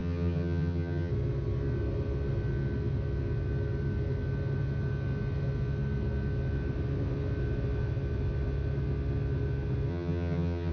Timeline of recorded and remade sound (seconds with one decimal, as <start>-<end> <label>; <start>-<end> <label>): 0.0-1.1 remade; 1.1-9.9 recorded; 9.9-10.7 remade